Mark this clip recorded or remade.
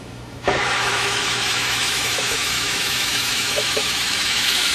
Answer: remade